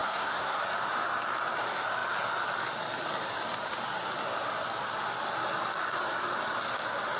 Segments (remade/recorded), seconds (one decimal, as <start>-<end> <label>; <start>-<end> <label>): 0.0-0.6 remade; 0.6-7.2 recorded

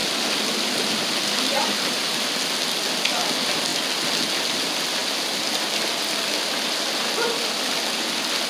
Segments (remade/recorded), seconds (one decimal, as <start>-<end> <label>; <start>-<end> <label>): 0.0-1.5 recorded; 1.5-2.1 remade; 2.1-8.5 recorded

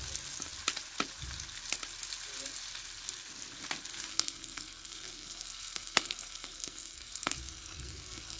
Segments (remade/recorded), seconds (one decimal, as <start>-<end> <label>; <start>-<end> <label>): 0.0-4.1 recorded; 4.1-8.4 remade

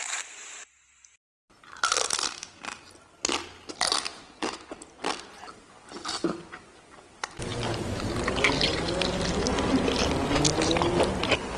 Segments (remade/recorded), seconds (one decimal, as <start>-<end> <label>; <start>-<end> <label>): 0.0-11.6 recorded

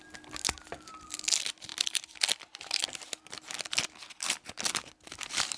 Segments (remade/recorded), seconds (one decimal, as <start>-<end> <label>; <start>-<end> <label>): 0.0-5.6 recorded

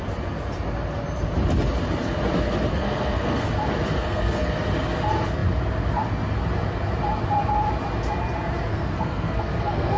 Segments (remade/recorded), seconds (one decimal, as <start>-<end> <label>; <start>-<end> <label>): 0.0-2.7 recorded; 2.7-3.5 remade; 3.5-4.0 recorded; 4.0-4.5 remade; 4.5-8.7 recorded; 8.7-10.0 remade

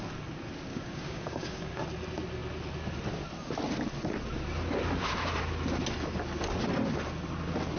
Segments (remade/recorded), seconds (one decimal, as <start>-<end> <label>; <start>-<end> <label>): 0.0-0.7 recorded; 0.7-1.8 remade; 1.8-7.8 recorded